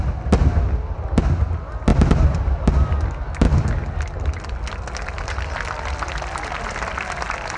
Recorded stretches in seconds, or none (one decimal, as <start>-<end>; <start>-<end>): 0.0-7.6